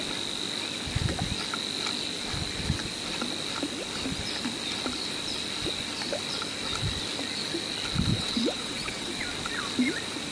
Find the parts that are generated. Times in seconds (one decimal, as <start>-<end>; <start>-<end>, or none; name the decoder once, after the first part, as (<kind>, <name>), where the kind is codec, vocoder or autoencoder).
8.1-9.1 (vocoder, WaveNeXt)